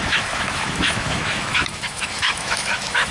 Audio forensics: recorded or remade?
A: remade